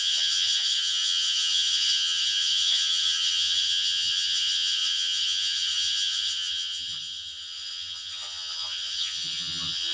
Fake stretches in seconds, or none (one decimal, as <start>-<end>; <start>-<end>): 0.0-9.9